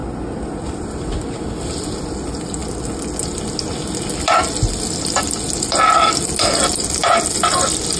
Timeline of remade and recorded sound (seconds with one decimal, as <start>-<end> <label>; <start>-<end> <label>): 0.0-8.0 recorded